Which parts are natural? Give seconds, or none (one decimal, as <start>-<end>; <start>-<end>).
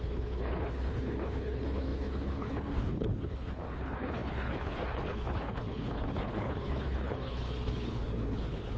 none